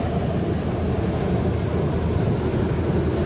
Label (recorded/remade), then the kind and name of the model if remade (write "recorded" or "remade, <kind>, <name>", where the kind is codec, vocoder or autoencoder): recorded